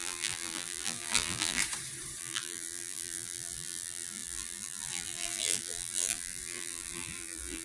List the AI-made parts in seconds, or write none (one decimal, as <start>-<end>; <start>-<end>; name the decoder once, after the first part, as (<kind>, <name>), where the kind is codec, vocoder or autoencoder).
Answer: 0.0-1.6 (vocoder, BigVGAN v2); 2.2-7.6